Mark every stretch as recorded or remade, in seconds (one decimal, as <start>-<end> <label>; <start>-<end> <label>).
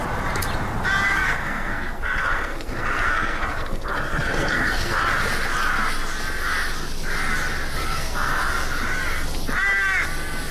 0.0-1.1 recorded; 1.1-5.0 remade; 5.0-7.8 recorded; 7.8-8.4 remade; 8.4-10.5 recorded